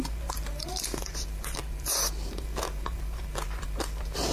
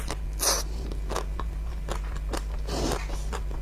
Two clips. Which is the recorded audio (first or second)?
second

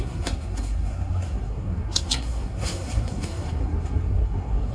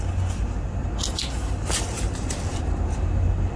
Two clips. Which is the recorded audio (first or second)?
second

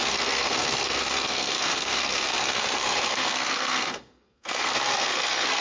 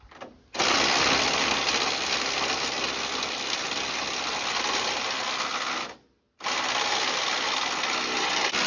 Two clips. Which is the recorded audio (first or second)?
second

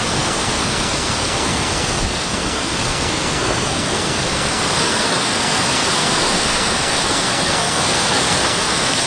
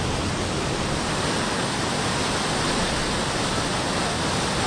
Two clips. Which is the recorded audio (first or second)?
second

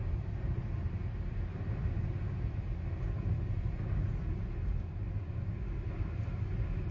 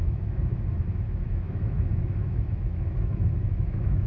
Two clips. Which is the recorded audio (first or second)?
first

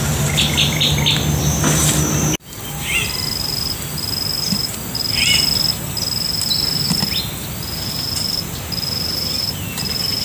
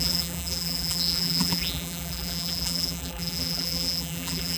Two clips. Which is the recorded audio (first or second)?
first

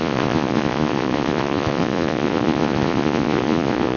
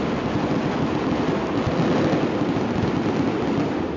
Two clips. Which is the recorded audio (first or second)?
second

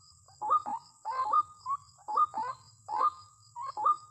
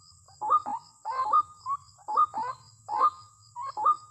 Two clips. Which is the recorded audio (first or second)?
second